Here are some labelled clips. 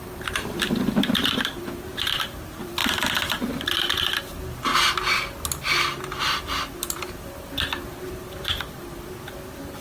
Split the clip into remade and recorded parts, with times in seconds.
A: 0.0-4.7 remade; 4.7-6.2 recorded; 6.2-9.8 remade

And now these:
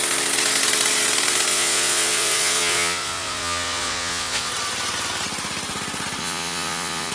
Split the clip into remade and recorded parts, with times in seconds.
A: 0.0-1.5 recorded; 1.5-4.5 remade; 4.5-6.2 recorded; 6.2-7.1 remade

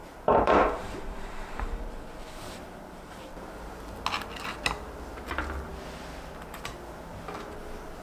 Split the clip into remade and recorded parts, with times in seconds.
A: 0.0-3.5 remade; 3.5-8.0 recorded

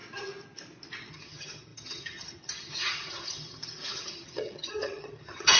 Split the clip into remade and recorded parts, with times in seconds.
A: 0.0-1.1 recorded; 1.1-5.6 remade

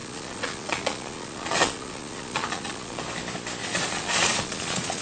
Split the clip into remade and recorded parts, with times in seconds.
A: 0.0-3.0 remade; 3.0-3.6 recorded; 3.6-5.0 remade

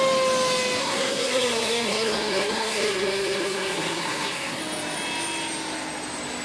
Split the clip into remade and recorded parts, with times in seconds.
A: 0.0-0.8 recorded; 0.8-4.6 remade; 4.6-6.4 recorded